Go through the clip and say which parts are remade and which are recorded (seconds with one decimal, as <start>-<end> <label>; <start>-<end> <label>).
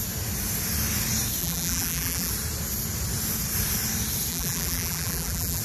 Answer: 0.0-1.4 recorded; 1.4-2.3 remade; 2.3-4.3 recorded; 4.3-5.6 remade